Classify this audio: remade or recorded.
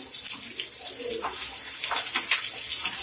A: recorded